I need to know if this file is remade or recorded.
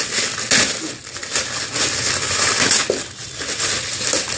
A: recorded